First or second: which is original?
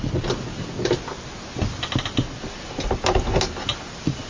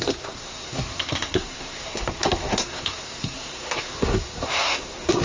first